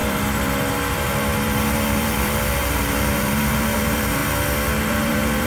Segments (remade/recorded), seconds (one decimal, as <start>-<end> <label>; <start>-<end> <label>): 0.0-4.2 remade; 4.2-4.9 recorded; 4.9-5.5 remade